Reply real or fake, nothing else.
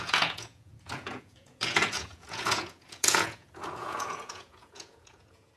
fake